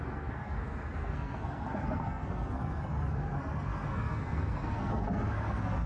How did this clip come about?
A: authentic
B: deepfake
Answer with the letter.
B